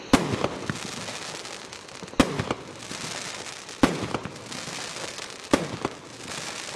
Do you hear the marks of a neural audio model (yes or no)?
no